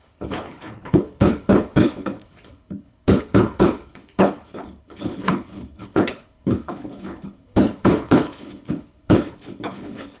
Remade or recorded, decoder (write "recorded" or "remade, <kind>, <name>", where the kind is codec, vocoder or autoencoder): remade, codec, HILCodec